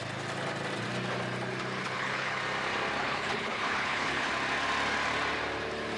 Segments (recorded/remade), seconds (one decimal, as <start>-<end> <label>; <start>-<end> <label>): 0.0-1.8 recorded; 1.8-2.4 remade; 2.4-3.0 recorded; 3.0-4.3 remade; 4.3-6.0 recorded